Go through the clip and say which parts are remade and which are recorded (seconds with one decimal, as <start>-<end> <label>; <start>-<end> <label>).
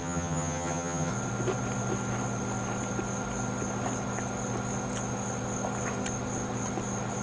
0.0-1.1 remade; 1.1-7.2 recorded